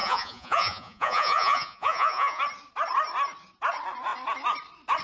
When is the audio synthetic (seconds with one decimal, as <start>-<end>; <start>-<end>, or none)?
0.0-2.4